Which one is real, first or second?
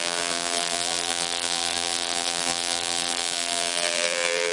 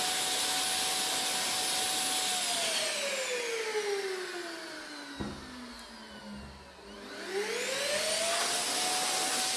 second